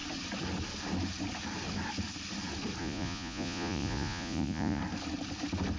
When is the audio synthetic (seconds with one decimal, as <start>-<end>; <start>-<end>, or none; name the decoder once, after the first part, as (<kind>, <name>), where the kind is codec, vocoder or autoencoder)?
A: 2.8-4.8 (vocoder, Vocos)